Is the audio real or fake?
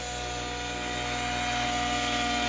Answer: real